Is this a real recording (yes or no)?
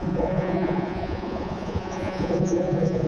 no